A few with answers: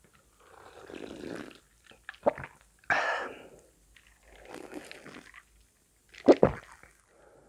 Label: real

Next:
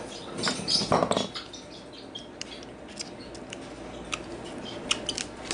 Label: real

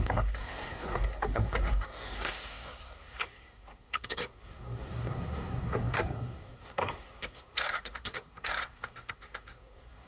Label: fake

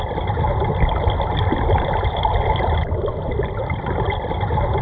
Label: real